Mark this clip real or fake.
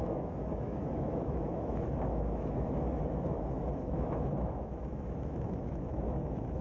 fake